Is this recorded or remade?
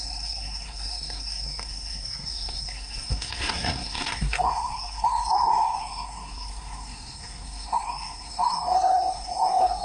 remade